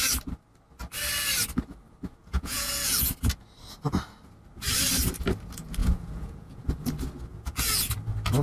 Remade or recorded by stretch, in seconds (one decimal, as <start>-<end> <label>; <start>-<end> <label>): 0.0-2.2 recorded; 2.2-3.1 remade; 3.1-5.8 recorded; 5.8-6.6 remade; 6.6-7.3 recorded; 7.3-7.9 remade; 7.9-8.4 recorded